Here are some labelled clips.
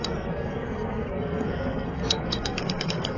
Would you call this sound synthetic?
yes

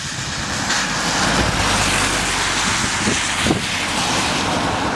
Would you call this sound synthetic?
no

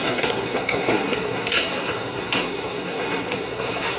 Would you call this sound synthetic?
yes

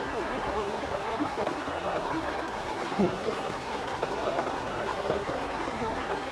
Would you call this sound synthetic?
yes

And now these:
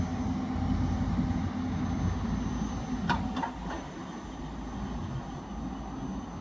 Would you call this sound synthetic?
no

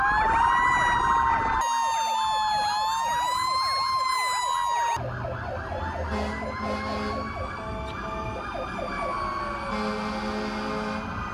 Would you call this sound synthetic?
no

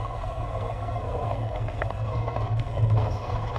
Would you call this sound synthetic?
yes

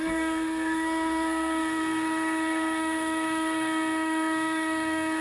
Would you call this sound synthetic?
yes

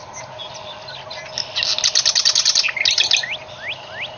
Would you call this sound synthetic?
no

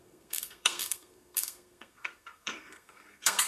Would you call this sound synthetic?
yes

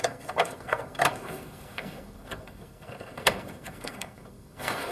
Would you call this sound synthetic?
yes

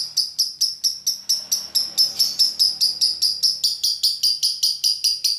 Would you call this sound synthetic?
no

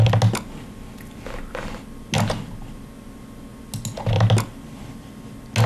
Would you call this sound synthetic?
no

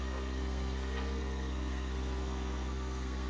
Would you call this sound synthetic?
yes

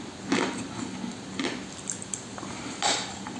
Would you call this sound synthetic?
no